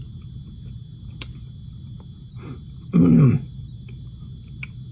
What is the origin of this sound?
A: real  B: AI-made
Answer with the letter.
A